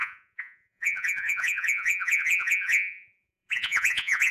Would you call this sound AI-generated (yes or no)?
yes